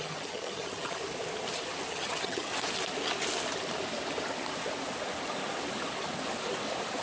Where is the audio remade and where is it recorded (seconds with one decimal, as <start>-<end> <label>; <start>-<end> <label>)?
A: 0.0-1.0 remade; 1.0-1.9 recorded; 1.9-2.5 remade; 2.5-7.0 recorded